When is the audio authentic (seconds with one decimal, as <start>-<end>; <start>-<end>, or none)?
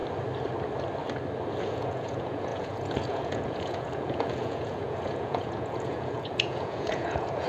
0.0-1.6